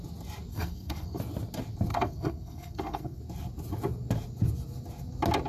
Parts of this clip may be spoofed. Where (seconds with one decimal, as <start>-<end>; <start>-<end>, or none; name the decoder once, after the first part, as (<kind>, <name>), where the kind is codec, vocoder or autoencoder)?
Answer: 0.5-1.2 (codec, SNAC); 1.9-3.2